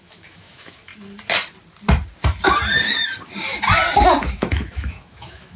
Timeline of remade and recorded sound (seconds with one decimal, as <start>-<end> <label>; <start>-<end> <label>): 0.0-0.9 remade; 0.9-4.3 recorded; 4.3-5.6 remade